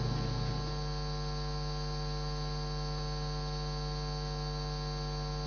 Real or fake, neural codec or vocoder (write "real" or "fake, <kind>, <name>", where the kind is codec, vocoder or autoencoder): real